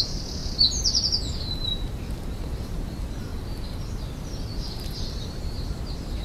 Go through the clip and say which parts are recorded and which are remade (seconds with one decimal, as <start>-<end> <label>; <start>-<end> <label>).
0.0-0.4 remade; 0.4-1.5 recorded; 1.5-3.3 remade; 3.3-5.1 recorded; 5.1-6.2 remade